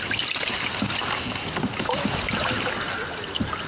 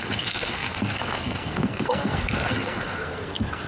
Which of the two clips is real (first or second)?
first